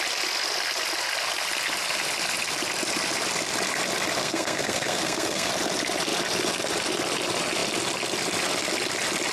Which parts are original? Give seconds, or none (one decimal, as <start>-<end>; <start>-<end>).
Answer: 0.0-4.2; 5.5-9.3